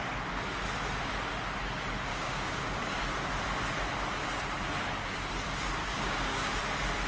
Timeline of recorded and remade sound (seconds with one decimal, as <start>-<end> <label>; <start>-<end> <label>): 0.0-2.1 recorded; 2.1-3.0 remade; 3.0-5.8 recorded; 5.8-6.6 remade; 6.6-7.1 recorded